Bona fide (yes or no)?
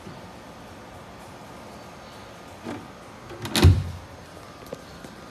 yes